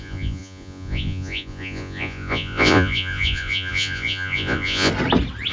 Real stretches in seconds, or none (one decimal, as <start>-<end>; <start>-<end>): 4.9-5.5